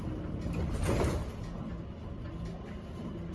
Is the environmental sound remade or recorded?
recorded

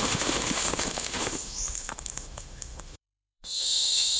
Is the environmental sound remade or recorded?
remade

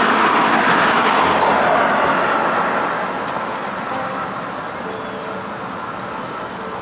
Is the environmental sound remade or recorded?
recorded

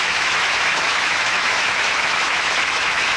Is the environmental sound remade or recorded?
remade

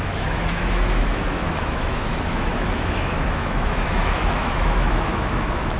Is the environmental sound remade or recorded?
remade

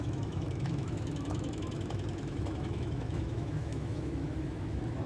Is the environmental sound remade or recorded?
remade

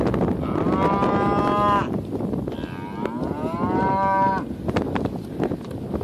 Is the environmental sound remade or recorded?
recorded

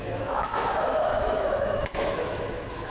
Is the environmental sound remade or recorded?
remade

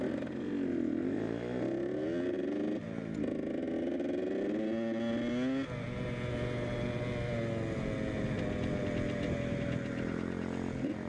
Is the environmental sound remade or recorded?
recorded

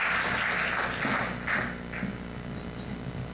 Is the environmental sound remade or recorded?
recorded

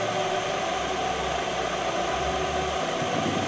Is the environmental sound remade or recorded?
recorded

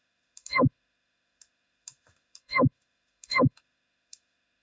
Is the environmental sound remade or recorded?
remade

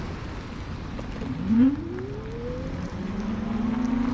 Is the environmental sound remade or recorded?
recorded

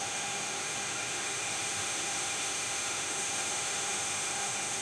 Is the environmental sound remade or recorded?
remade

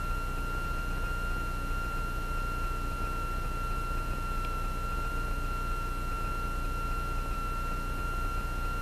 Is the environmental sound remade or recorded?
recorded